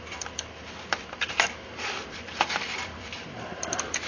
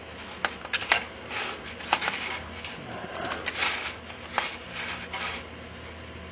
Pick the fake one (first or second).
first